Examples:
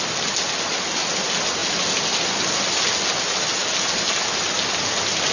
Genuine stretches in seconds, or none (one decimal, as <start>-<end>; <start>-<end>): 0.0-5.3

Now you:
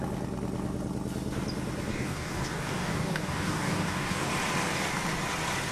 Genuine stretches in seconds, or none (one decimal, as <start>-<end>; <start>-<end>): 0.0-1.9; 4.3-5.7

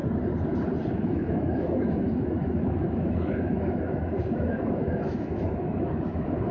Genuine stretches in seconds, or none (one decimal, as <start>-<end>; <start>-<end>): 0.0-0.9

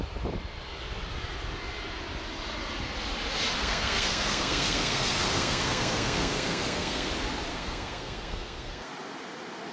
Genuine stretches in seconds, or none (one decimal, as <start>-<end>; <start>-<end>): 0.0-3.6; 7.1-7.5; 8.9-9.7

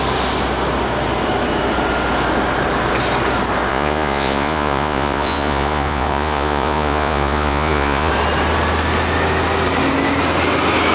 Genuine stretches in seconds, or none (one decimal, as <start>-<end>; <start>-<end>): 0.0-3.7; 8.1-10.9